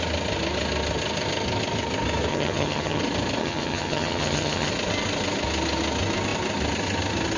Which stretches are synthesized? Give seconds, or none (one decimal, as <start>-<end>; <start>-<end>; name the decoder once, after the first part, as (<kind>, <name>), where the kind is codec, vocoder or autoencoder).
2.3-3.0 (vocoder, HiFi-GAN); 3.4-4.7